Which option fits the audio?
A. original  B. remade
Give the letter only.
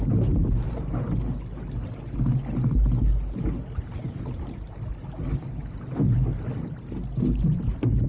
A